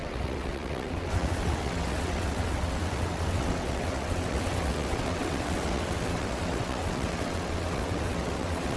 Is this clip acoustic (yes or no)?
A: no